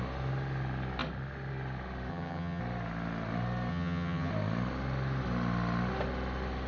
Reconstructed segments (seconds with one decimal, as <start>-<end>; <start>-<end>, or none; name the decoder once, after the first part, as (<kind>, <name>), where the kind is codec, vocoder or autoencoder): 2.1-2.6 (vocoder, HiFi-GAN); 3.7-4.3